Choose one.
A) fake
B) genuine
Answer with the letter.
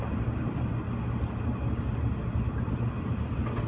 B